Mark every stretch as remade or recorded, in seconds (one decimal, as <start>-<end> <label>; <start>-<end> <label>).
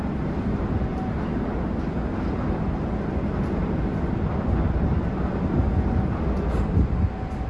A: 0.0-7.5 recorded